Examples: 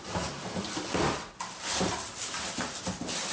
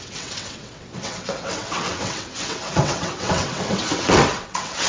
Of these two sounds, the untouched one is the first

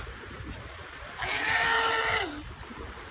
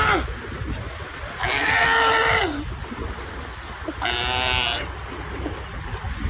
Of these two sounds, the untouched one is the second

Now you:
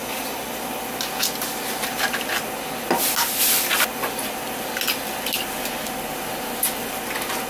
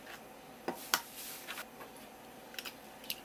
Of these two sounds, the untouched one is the first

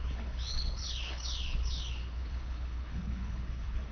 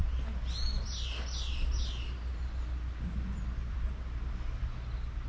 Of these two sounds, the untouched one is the second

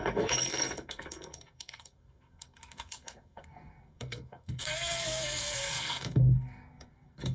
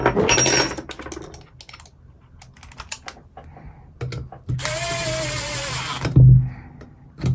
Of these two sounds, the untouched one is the second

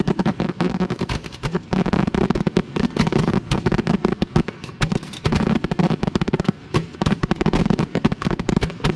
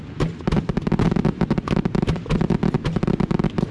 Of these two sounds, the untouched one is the second